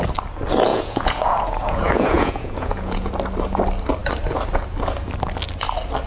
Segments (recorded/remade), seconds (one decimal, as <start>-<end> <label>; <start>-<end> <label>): 0.0-0.7 recorded; 0.7-3.1 remade; 3.1-6.1 recorded

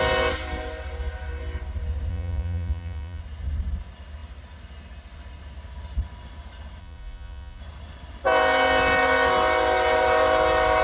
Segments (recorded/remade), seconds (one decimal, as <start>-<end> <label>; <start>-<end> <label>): 0.0-2.1 recorded; 2.1-3.2 remade; 3.2-6.8 recorded; 6.8-7.6 remade; 7.6-10.8 recorded

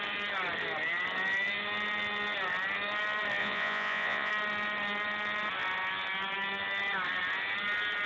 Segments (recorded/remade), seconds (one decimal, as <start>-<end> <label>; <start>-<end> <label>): 0.0-3.4 recorded; 3.4-4.3 remade; 4.3-8.1 recorded

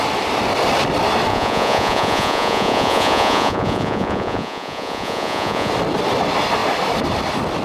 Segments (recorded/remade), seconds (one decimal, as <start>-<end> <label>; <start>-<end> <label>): 0.0-1.3 recorded; 1.3-5.7 remade; 5.7-7.6 recorded

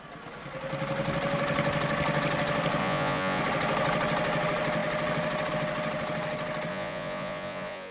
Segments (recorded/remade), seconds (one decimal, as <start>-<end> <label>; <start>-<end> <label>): 0.0-2.8 recorded; 2.8-3.4 remade; 3.4-6.7 recorded; 6.7-7.9 remade